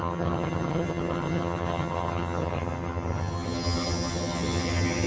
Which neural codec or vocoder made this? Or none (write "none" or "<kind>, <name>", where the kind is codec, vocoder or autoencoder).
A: vocoder, HiFi-GAN